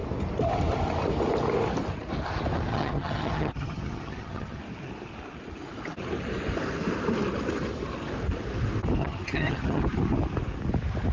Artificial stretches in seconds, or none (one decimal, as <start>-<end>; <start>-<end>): 2.7-4.6; 9.0-9.8